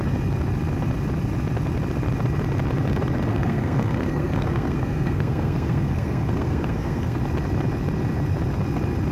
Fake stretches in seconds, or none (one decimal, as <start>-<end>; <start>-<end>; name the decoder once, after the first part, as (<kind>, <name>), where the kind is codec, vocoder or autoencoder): 3.3-7.2 (codec, SNAC)